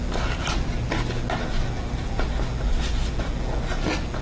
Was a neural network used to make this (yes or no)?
no